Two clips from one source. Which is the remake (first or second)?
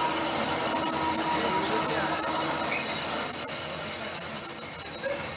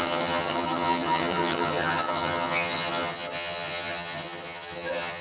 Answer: second